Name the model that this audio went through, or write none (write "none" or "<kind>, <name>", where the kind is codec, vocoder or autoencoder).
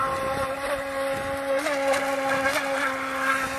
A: none